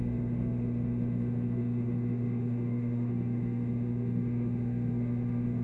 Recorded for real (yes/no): no